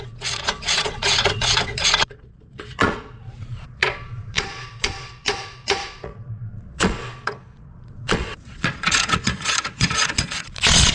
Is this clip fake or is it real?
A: fake